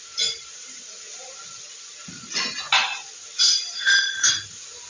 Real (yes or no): yes